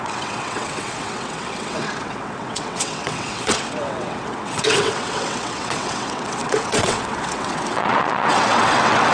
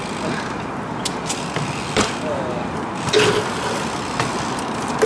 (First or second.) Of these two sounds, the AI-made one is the first